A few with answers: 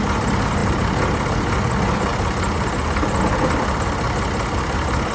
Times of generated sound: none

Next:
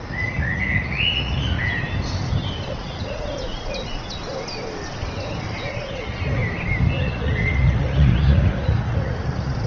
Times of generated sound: 0.0-1.6 (vocoder, Vocos); 2.7-4.2; 5.7-6.4; 7.0-9.7

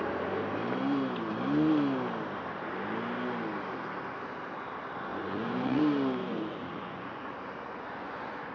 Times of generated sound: 5.1-5.8 (vocoder, Vocos); 6.2-8.5

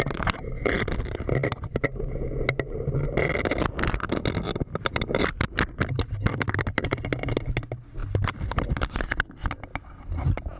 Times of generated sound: none

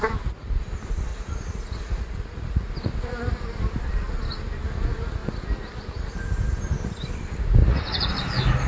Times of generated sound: 1.1-2.7 (vocoder, Vocos); 7.6-8.1